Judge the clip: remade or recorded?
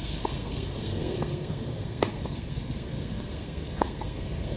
remade